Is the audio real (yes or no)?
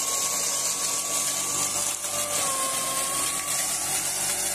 yes